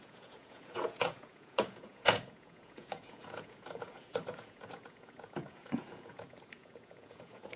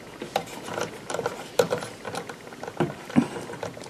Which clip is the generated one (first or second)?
first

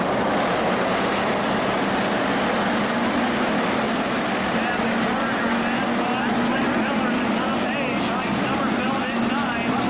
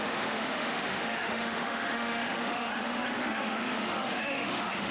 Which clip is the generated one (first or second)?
second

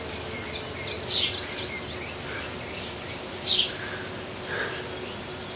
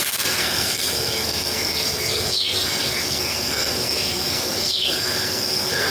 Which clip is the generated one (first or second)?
second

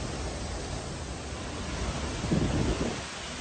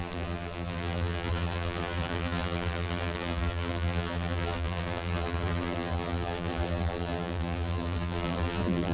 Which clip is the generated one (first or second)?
second